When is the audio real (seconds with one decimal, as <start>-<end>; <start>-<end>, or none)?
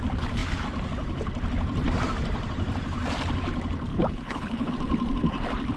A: 0.0-3.9; 4.7-5.8